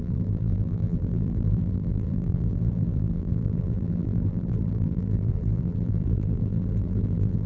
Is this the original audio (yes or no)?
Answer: no